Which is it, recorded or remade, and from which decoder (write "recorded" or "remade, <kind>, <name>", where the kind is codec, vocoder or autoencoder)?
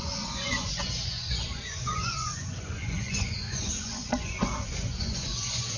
remade, vocoder, Vocos